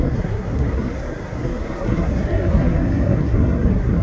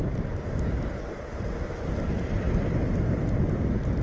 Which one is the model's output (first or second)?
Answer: first